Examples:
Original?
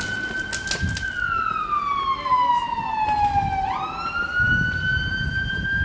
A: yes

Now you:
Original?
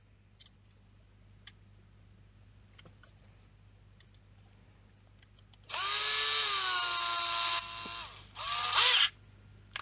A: yes